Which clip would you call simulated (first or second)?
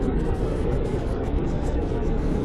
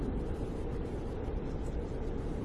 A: first